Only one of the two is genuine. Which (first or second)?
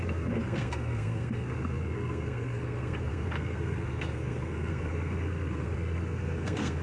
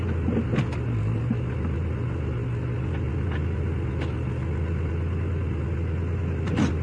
second